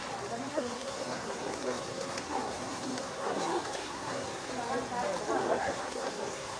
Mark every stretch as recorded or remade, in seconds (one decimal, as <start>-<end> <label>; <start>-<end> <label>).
0.0-0.5 recorded; 0.5-4.5 remade; 4.5-5.4 recorded; 5.4-6.6 remade